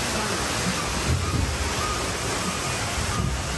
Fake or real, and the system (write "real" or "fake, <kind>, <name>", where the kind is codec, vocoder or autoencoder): real